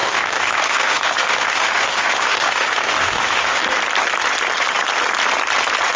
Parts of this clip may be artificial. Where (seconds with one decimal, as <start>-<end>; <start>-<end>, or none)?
0.0-3.6